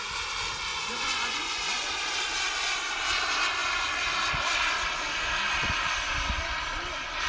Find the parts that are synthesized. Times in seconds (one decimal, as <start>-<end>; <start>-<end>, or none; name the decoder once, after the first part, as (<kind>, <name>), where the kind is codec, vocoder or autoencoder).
0.7-1.9 (vocoder, Vocos)